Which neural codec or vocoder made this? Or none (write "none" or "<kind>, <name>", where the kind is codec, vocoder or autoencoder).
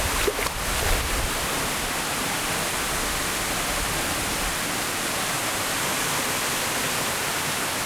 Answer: none